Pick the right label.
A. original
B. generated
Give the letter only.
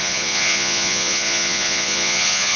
B